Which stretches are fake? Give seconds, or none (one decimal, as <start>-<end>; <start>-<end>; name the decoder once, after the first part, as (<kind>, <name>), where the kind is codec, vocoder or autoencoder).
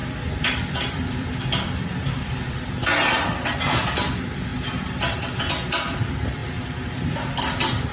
0.0-2.7 (vocoder, BigVGAN v2)